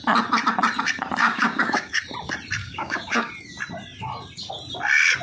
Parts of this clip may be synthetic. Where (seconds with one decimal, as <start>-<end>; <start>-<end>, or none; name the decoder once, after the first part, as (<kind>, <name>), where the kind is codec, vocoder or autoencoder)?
1.2-2.0 (codec, DAC); 2.6-3.3